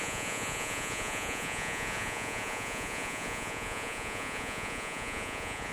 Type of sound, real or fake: fake